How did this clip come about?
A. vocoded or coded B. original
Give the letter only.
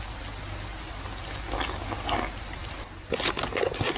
B